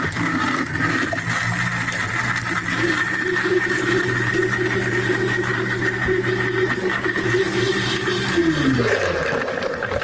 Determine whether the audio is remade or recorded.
recorded